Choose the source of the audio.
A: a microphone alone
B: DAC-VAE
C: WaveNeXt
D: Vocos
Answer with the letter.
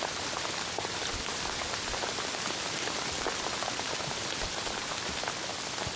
A